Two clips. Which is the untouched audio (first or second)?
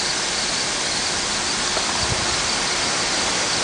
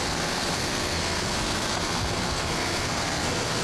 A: first